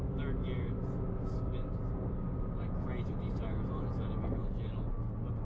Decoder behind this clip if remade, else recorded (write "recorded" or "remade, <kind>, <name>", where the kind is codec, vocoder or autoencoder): recorded